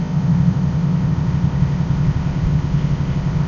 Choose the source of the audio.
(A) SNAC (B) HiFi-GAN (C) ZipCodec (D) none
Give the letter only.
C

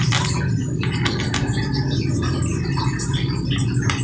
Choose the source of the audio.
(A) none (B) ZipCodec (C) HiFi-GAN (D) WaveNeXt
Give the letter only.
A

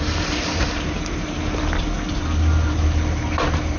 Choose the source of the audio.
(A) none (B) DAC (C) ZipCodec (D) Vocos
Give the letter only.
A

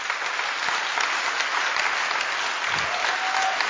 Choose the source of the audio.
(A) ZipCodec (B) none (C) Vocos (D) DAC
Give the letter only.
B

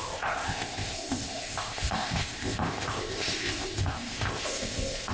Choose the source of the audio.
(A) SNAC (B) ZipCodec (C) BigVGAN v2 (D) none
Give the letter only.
B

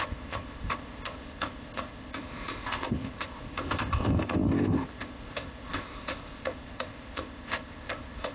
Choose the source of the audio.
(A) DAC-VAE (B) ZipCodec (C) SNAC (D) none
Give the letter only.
B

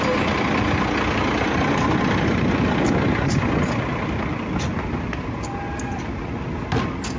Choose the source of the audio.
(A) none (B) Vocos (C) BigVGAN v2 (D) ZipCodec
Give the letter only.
A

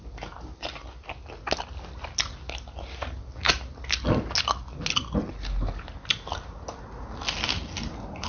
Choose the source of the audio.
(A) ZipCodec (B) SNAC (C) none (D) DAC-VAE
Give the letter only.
C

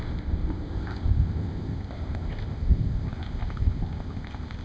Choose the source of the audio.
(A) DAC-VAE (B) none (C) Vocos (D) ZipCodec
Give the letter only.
D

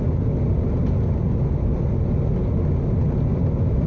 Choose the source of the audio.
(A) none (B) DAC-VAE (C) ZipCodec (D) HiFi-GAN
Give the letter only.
A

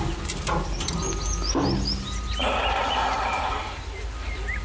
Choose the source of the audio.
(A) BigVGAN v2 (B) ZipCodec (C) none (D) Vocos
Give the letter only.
C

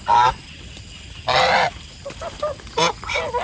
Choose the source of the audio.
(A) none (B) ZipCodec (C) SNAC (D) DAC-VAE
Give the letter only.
A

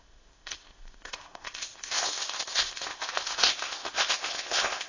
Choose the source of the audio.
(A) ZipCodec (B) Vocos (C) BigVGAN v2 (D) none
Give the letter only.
A